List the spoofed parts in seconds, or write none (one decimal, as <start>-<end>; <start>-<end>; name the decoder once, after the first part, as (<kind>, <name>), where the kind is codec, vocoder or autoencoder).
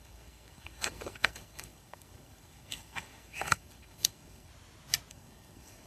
0.0-4.5 (codec, SNAC); 5.1-5.9